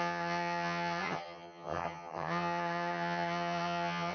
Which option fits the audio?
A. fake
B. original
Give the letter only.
A